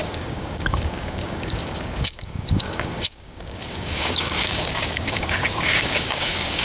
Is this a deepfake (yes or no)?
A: yes